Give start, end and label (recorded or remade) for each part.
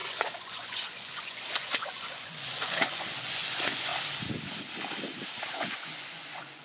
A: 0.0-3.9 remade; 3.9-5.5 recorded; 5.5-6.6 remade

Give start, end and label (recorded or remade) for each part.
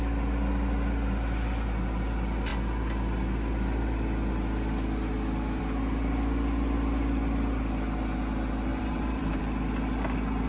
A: 0.0-8.7 recorded; 8.7-9.4 remade; 9.4-10.5 recorded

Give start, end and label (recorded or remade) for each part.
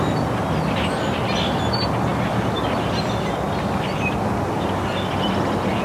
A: 0.0-5.8 recorded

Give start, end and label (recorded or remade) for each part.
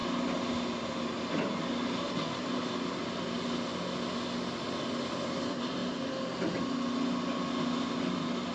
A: 0.0-8.5 recorded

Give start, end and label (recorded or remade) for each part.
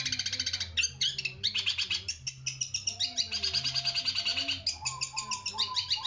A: 0.0-6.1 recorded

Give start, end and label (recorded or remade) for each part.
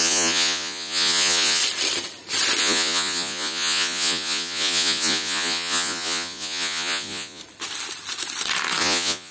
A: 0.0-1.6 remade; 1.6-2.6 recorded; 2.6-7.4 remade; 7.4-8.8 recorded; 8.8-9.3 remade